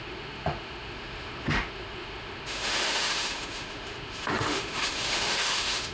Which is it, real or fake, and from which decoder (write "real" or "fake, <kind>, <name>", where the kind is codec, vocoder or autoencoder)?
fake, autoencoder, DAC-VAE